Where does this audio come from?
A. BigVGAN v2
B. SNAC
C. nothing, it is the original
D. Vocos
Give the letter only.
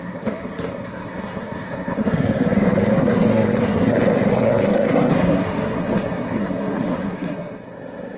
B